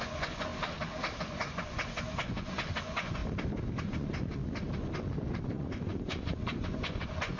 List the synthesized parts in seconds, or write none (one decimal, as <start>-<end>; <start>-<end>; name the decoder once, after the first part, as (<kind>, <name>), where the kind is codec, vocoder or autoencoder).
0.0-0.5 (vocoder, Vocos); 1.2-3.2; 3.8-4.4; 5.4-7.4